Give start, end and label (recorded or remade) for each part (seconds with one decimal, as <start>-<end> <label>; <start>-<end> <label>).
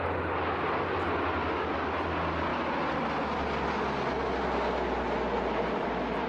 0.0-6.3 recorded